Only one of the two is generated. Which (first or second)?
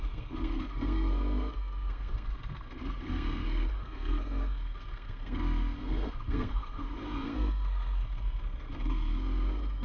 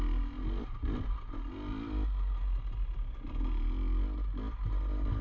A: first